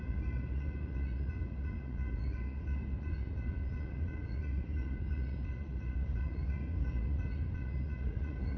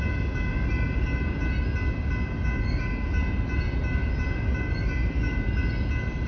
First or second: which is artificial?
first